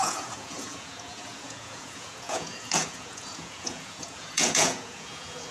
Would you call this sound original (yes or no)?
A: no